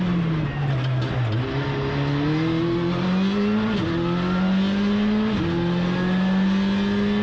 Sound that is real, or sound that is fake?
real